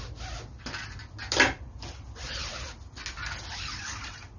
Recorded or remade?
recorded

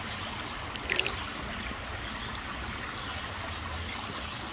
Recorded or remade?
recorded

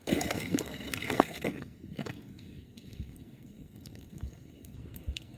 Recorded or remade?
remade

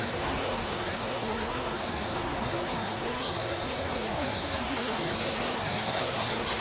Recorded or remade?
remade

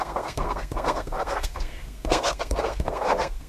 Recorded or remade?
remade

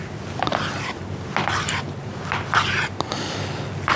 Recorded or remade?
recorded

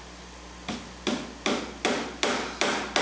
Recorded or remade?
recorded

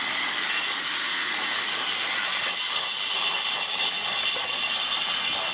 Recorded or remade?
recorded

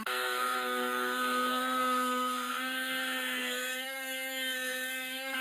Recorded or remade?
remade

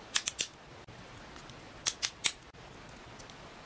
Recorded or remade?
recorded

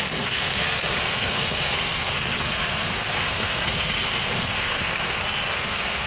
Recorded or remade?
remade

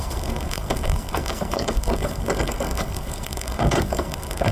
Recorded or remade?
remade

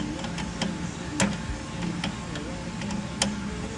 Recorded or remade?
recorded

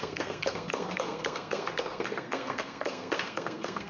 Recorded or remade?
remade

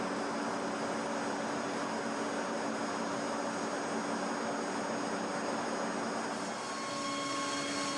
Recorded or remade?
recorded